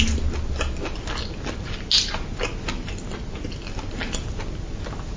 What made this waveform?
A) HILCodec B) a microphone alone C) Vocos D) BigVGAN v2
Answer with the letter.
B